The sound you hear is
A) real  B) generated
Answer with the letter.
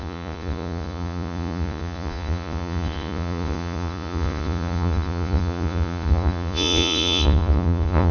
B